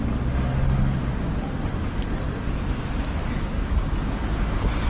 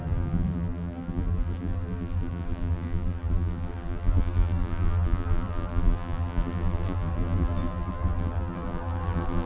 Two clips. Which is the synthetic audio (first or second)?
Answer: second